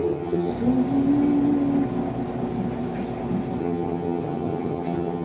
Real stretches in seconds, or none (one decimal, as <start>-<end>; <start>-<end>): 0.5-3.6